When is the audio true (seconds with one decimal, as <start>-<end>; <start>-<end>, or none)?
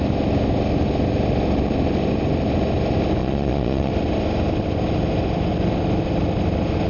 0.0-3.2; 3.9-6.9